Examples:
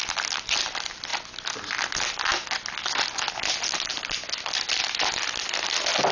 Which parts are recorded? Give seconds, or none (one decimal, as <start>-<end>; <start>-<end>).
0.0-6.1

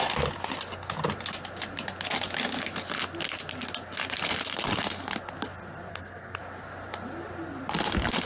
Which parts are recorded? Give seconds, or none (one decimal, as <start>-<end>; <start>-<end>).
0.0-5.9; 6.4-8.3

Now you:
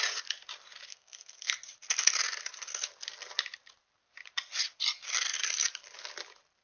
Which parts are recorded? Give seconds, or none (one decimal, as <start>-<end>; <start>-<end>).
0.0-0.9; 1.5-6.6